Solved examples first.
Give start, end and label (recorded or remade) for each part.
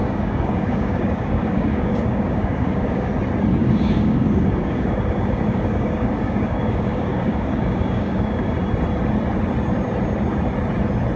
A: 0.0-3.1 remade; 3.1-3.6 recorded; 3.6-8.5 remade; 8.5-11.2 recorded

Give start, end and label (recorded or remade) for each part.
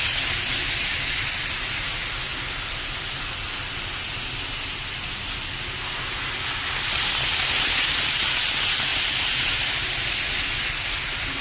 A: 0.0-11.4 recorded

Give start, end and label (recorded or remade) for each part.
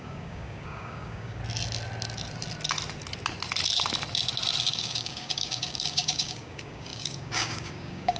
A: 0.0-1.4 remade; 1.4-4.6 recorded; 4.6-8.2 remade